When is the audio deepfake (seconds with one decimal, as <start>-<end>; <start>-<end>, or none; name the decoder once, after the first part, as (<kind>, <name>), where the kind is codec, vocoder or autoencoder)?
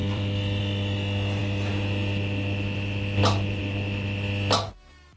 0.0-0.6 (vocoder, BigVGAN v2); 1.4-3.6